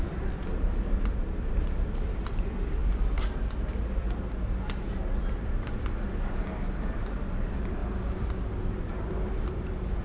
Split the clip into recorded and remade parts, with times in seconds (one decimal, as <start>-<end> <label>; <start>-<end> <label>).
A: 0.0-2.8 remade; 2.8-4.9 recorded; 4.9-7.8 remade; 7.8-8.9 recorded; 8.9-10.0 remade